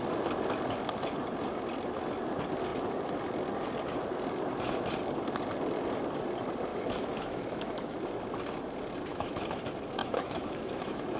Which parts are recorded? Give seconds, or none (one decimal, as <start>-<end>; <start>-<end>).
0.0-6.7; 8.0-9.1; 9.6-10.0